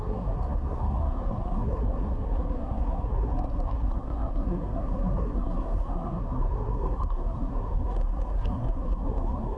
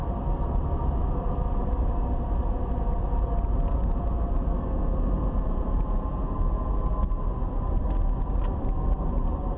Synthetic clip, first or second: first